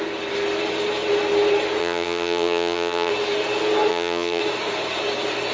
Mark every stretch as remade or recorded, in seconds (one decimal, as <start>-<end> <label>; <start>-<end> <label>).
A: 0.0-1.8 recorded; 1.8-3.1 remade; 3.1-3.9 recorded; 3.9-4.4 remade; 4.4-5.5 recorded